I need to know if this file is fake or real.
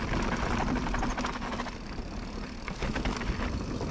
real